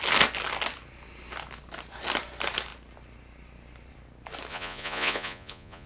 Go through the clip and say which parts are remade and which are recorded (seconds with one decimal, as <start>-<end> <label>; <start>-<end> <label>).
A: 0.0-4.5 recorded; 4.5-5.9 remade